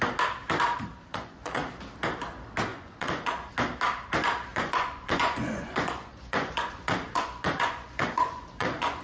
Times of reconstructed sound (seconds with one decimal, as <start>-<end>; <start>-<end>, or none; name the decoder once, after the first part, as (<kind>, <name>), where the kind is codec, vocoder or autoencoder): 1.1-1.7 (vocoder, Vocos); 2.7-3.5; 4.5-9.0